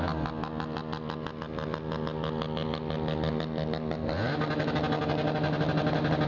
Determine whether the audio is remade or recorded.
recorded